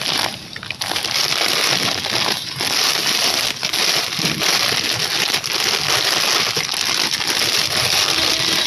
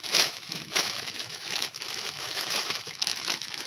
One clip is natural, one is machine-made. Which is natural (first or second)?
first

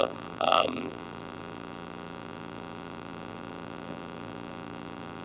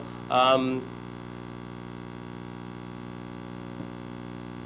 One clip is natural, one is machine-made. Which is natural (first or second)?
second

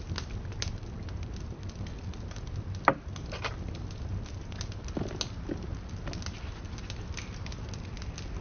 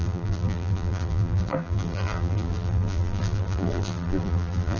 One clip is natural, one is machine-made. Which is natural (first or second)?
first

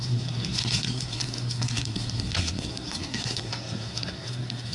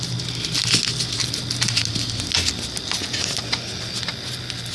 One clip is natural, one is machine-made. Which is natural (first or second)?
second